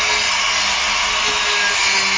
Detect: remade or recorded recorded